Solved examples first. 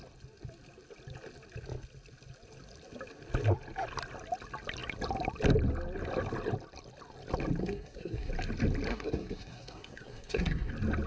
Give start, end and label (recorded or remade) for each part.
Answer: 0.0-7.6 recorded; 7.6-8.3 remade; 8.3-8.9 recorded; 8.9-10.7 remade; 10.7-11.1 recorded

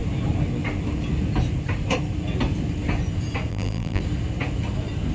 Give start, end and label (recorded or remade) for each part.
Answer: 0.0-3.5 recorded; 3.5-4.0 remade; 4.0-5.1 recorded

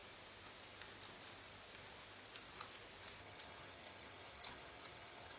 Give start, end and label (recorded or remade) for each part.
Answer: 0.0-3.2 recorded; 3.2-5.4 remade